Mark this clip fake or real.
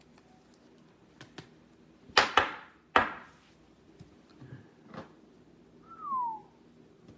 real